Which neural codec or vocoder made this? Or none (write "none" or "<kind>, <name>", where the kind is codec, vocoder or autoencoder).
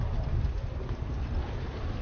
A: none